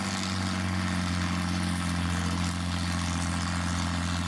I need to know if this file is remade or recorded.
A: recorded